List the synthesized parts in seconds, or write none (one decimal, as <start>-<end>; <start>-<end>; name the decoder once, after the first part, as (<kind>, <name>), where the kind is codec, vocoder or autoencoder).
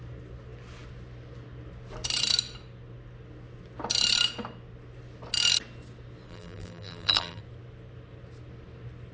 6.3-7.4 (vocoder, BigVGAN v2)